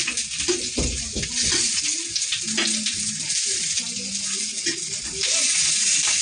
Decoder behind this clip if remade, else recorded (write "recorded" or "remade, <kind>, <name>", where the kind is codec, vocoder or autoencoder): recorded